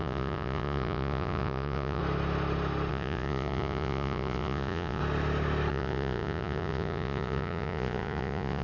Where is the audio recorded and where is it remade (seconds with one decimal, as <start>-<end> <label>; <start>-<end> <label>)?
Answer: 0.0-2.0 remade; 2.0-2.9 recorded; 2.9-5.0 remade; 5.0-5.7 recorded; 5.7-8.6 remade